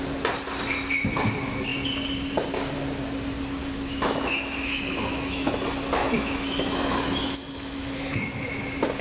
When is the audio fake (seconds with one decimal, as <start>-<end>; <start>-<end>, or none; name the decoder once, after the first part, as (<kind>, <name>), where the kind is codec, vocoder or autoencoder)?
3.6-5.6 (autoencoder, DAC-VAE); 6.0-8.6